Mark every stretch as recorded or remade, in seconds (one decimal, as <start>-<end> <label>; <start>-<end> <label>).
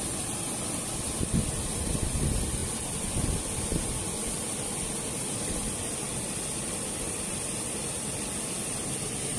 0.0-9.4 recorded